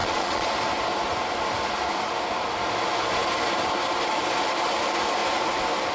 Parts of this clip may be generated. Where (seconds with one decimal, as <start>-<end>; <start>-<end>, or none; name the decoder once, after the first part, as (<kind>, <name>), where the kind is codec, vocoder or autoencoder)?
0.0-0.5 (vocoder, Vocos)